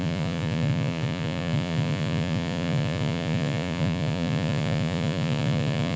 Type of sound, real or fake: fake